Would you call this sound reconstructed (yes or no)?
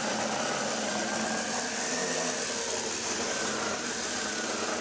no